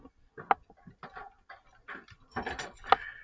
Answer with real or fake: real